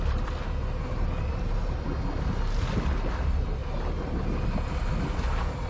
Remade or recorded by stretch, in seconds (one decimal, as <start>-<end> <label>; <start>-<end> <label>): 0.0-5.7 recorded